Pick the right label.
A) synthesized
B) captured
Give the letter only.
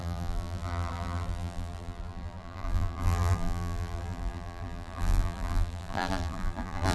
A